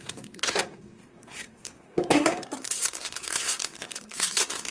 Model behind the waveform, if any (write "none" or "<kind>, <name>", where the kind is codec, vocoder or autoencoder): codec, SNAC